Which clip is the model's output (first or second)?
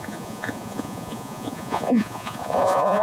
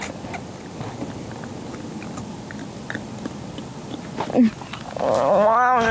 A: first